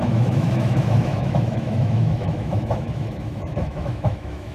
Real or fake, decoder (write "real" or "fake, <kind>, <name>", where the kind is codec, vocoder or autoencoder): fake, autoencoder, DAC-VAE